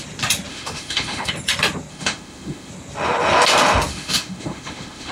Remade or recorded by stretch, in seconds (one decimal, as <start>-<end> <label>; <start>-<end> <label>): 0.0-0.5 recorded; 0.5-1.3 remade; 1.3-1.9 recorded; 1.9-2.7 remade; 2.7-3.9 recorded; 3.9-5.1 remade